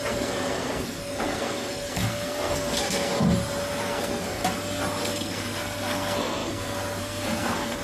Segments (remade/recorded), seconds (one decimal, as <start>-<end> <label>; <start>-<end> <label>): 0.0-3.1 remade; 3.1-3.8 recorded; 3.8-4.4 remade; 4.4-5.0 recorded; 5.0-7.8 remade